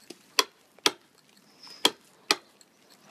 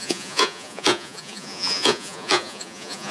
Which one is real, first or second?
first